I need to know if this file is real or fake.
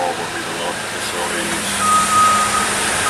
fake